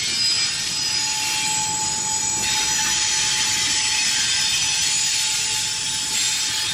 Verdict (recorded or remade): recorded